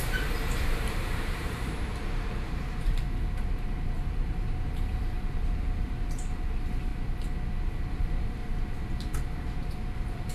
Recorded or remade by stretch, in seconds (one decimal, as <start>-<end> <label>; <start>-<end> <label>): 0.0-6.9 remade; 6.9-7.8 recorded; 7.8-8.4 remade; 8.4-9.6 recorded; 9.6-10.3 remade